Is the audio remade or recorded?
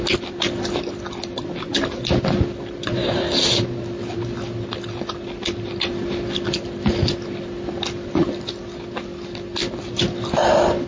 recorded